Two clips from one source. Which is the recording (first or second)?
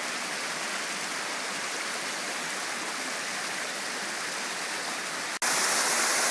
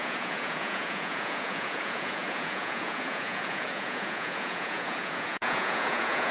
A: first